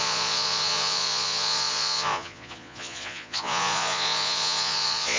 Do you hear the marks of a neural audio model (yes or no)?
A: yes